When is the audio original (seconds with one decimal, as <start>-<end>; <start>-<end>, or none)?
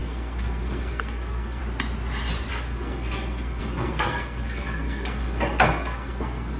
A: 1.6-2.5